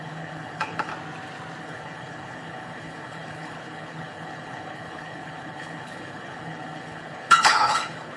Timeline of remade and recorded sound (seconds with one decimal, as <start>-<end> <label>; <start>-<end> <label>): 0.0-0.9 remade; 0.9-1.6 recorded; 1.6-8.2 remade